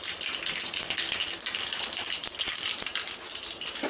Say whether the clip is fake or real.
real